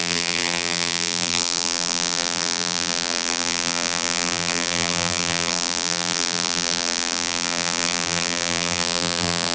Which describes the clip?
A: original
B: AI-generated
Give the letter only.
B